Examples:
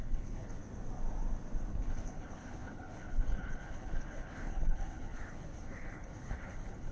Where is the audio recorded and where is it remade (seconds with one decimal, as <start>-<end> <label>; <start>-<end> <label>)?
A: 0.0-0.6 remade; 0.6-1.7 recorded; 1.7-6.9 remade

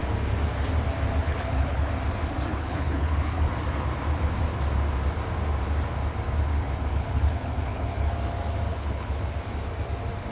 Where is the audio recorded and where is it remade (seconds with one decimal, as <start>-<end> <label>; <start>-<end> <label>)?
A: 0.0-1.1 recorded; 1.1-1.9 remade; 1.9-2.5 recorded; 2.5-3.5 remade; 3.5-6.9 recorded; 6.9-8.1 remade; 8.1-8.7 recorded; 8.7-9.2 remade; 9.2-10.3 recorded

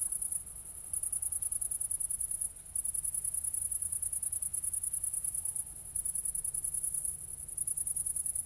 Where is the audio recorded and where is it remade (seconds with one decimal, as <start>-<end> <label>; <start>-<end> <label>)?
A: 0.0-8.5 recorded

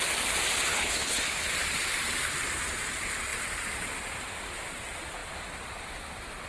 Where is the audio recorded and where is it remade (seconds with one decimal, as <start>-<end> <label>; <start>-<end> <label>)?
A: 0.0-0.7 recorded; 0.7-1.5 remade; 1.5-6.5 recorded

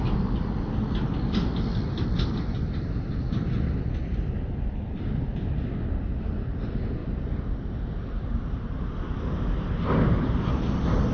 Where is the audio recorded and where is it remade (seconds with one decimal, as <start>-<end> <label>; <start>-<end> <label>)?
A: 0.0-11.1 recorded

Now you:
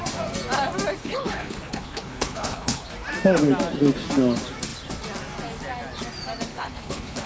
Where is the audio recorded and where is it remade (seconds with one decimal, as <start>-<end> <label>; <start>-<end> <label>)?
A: 0.0-1.0 recorded; 1.0-2.9 remade; 2.9-6.5 recorded; 6.5-7.3 remade